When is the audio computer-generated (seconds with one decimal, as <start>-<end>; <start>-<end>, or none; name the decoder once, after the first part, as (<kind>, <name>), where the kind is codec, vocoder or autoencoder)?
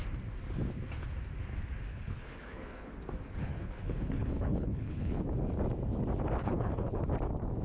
1.9-2.9 (codec, HILCodec); 3.5-5.2; 6.4-7.0